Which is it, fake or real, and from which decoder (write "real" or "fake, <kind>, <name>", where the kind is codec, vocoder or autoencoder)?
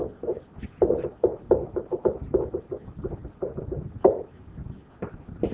fake, vocoder, BigVGAN v2